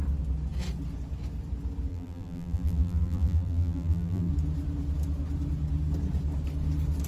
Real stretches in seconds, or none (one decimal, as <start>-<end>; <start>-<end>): 0.0-1.9; 4.3-7.1